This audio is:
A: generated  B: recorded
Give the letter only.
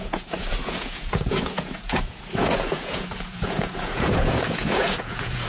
A